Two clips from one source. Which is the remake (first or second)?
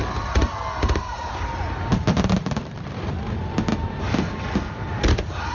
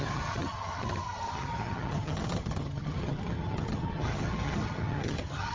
second